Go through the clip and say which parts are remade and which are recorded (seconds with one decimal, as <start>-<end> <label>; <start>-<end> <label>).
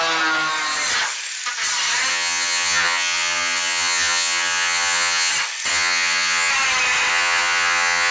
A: 0.0-2.1 recorded; 2.1-5.3 remade; 5.3-5.7 recorded; 5.7-6.5 remade; 6.5-7.1 recorded; 7.1-8.1 remade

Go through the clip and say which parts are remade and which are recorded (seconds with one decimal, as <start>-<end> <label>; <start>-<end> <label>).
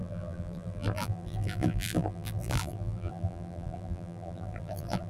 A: 0.0-5.1 remade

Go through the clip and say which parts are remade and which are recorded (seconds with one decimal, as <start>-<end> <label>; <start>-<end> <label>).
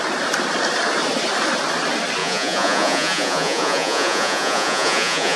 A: 0.0-2.2 recorded; 2.2-5.4 remade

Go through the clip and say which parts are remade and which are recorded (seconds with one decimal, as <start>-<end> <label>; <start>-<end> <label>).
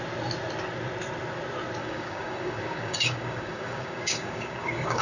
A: 0.0-1.8 recorded; 1.8-5.0 remade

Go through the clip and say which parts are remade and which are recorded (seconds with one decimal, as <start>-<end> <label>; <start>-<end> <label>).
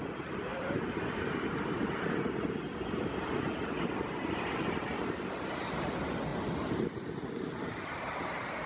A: 0.0-0.5 recorded; 0.5-5.5 remade; 5.5-6.3 recorded; 6.3-8.2 remade; 8.2-8.7 recorded